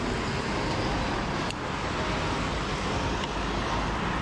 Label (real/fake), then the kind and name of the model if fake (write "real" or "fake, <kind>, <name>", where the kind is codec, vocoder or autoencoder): real